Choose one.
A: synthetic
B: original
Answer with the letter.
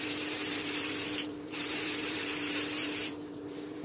A